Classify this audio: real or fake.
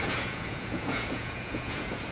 fake